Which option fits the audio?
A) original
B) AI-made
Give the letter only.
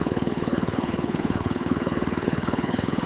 B